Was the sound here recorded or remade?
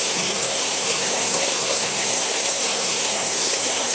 remade